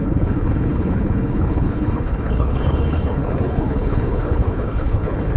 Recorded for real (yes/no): no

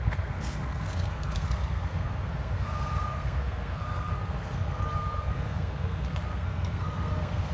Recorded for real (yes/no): no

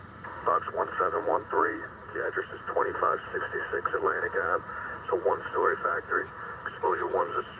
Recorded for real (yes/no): no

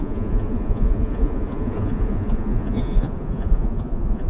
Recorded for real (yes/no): no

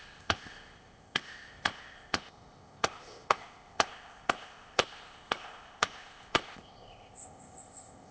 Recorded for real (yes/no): no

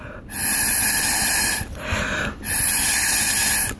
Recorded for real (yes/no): yes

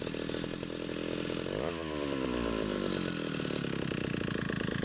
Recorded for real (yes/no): yes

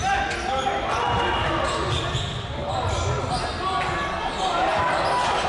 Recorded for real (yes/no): yes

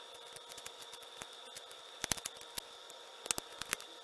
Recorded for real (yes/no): yes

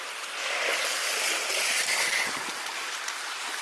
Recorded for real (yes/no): yes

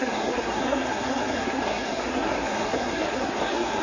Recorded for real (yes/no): no